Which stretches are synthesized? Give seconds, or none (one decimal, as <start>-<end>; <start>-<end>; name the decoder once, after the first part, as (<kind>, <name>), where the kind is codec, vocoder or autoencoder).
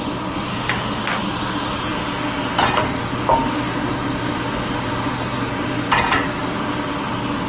0.5-1.0 (autoencoder, DAC-VAE)